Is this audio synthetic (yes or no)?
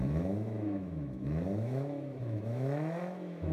yes